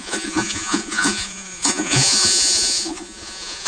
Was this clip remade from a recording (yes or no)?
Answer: yes